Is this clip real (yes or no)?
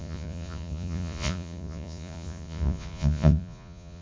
no